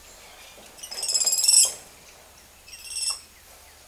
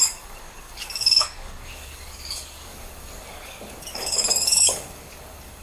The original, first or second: first